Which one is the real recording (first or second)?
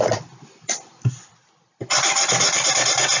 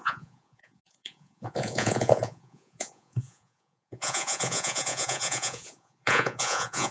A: first